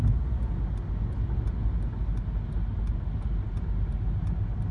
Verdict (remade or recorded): recorded